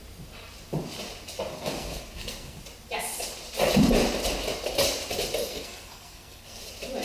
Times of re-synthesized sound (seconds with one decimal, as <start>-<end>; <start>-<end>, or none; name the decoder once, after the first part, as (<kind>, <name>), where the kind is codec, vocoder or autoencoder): 1.5-2.6 (codec, SNAC); 5.4-6.6